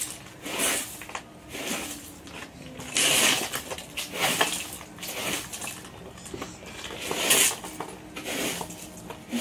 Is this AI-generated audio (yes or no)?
no